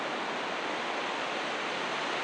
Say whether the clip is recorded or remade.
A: recorded